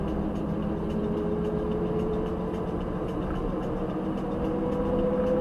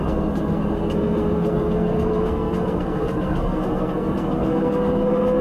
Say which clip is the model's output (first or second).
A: second